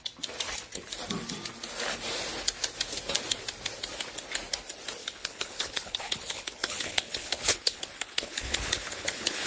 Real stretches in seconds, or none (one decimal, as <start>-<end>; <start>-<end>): 0.0-5.0